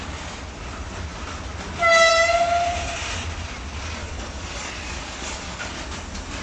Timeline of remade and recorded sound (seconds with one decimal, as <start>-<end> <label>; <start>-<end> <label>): 0.0-4.0 recorded; 4.0-5.7 remade; 5.7-6.4 recorded